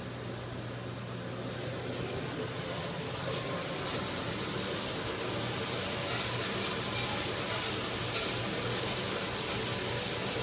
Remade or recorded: recorded